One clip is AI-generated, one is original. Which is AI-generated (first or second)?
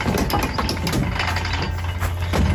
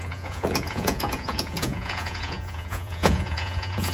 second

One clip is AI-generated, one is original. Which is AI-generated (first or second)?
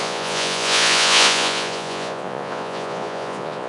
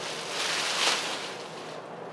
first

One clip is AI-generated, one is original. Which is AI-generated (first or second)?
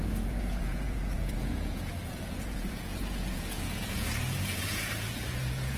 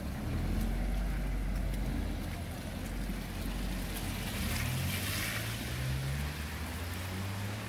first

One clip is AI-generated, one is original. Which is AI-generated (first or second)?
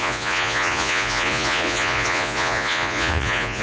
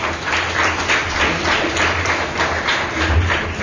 first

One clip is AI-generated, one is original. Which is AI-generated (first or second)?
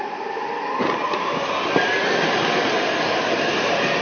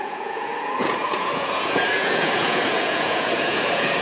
second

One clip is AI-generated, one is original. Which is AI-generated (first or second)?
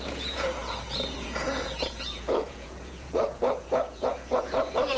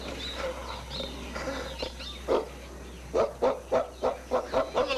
first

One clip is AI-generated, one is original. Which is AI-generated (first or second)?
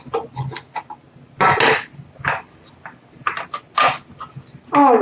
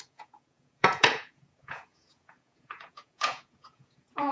second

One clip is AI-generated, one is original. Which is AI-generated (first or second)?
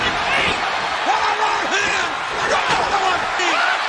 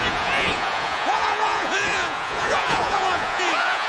second